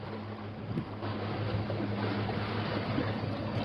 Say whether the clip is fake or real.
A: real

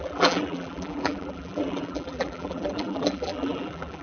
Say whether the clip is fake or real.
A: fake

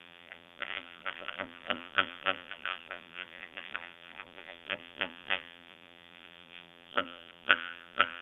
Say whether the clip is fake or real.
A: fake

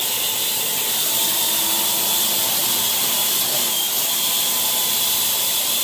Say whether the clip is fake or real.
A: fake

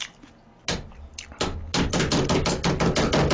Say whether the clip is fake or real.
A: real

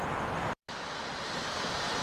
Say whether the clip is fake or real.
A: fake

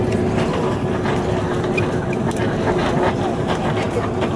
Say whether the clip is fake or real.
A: real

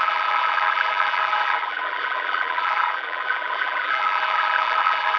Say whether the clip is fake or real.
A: fake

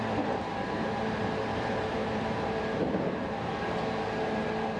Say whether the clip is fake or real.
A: fake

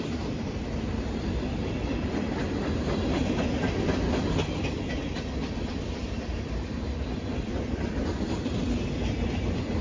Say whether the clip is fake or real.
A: fake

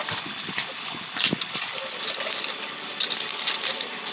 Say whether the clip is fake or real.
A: real